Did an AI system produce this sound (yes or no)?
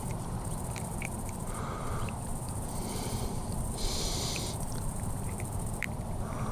yes